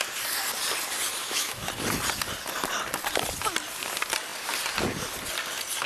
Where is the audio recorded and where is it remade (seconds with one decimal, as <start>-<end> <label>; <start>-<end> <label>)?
0.0-1.2 recorded; 1.2-1.7 remade; 1.7-5.9 recorded